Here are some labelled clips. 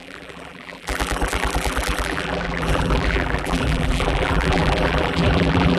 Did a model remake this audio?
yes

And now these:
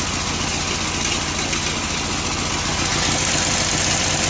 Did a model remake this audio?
no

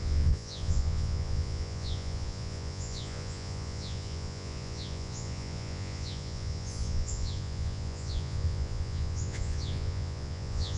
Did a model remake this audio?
yes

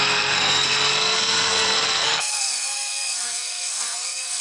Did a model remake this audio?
yes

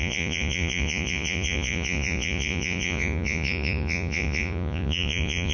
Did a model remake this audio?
yes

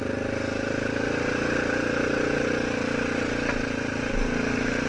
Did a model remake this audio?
no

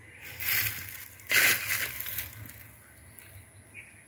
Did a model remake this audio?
no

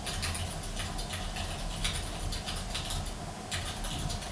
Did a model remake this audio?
no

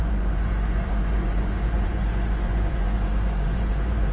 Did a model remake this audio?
yes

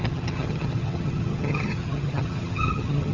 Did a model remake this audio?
yes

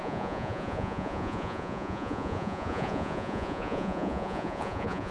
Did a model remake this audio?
yes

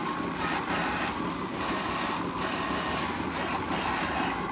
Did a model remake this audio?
no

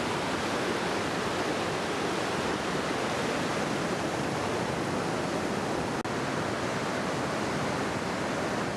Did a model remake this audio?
no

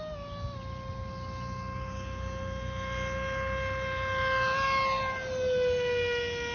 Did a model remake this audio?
no